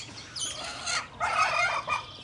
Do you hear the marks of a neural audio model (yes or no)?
no